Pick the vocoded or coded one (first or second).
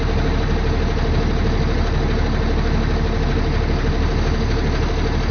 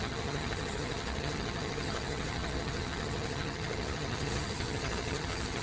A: second